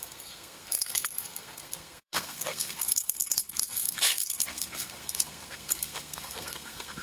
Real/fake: fake